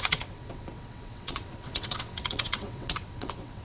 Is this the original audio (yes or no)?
no